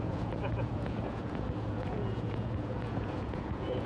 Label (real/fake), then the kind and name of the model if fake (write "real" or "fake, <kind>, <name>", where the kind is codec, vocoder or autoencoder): fake, vocoder, Vocos